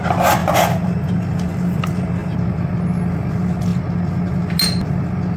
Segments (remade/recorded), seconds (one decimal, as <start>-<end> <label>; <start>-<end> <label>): 0.0-0.4 recorded; 0.4-1.1 remade; 1.1-2.2 recorded; 2.2-2.8 remade; 2.8-5.4 recorded